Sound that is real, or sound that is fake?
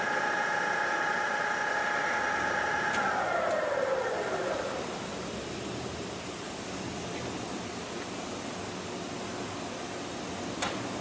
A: real